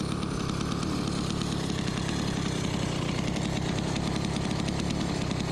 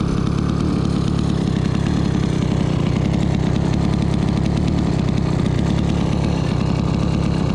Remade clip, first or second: first